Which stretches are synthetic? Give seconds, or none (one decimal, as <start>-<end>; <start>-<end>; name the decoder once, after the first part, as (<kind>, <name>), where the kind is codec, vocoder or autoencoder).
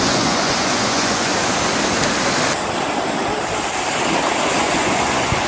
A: 0.0-1.3 (vocoder, Vocos); 4.6-5.5